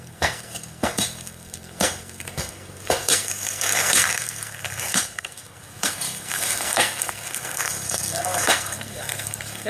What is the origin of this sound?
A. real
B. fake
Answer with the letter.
B